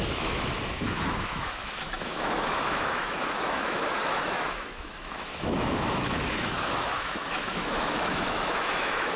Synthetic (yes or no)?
yes